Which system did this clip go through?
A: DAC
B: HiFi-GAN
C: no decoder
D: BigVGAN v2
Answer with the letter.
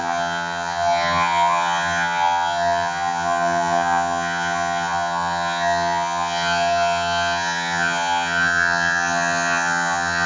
B